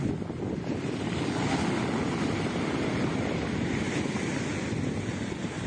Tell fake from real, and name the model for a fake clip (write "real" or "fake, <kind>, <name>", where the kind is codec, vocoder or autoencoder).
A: real